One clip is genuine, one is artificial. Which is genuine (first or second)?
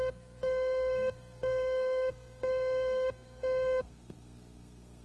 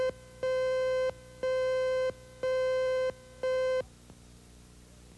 second